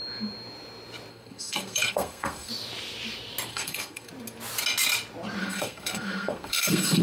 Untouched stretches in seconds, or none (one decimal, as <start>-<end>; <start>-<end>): 0.0-1.1; 2.5-3.5; 4.1-5.4